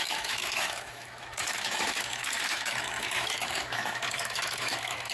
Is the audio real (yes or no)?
no